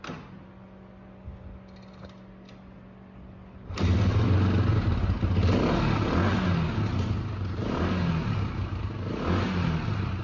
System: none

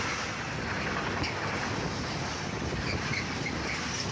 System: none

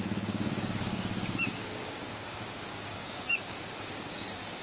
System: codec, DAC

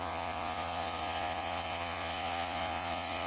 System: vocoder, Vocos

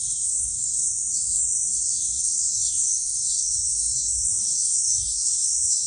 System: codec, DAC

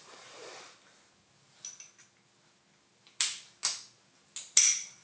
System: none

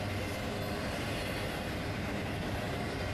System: vocoder, BigVGAN v2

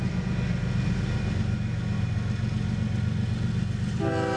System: none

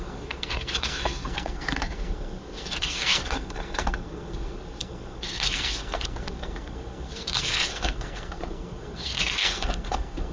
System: codec, SNAC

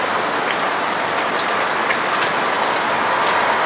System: none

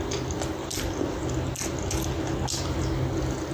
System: none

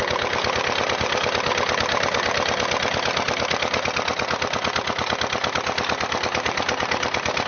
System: none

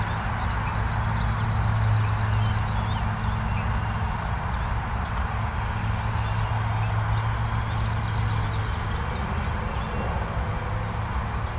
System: none